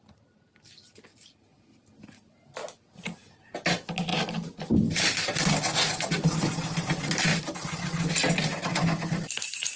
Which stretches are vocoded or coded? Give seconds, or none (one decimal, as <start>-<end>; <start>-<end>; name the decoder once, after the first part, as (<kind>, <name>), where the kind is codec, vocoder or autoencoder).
none